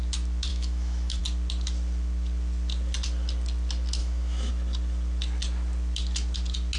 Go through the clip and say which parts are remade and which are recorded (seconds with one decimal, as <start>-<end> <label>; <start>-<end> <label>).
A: 0.0-0.5 recorded; 0.5-1.2 remade; 1.2-4.0 recorded; 4.0-4.5 remade; 4.5-6.8 recorded